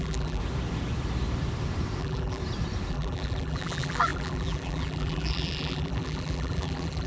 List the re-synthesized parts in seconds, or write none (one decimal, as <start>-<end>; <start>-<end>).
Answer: 0.0-0.4; 2.0-2.4; 2.9-7.1

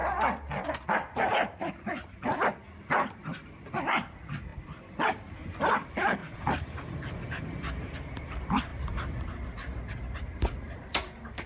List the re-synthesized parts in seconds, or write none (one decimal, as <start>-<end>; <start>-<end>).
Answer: 1.3-11.5

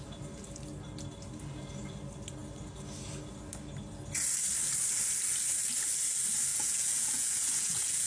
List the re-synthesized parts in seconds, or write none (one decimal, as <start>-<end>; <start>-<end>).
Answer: 6.5-8.1

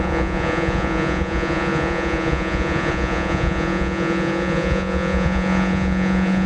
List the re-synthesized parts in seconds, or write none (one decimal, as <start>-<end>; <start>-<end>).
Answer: 0.0-6.5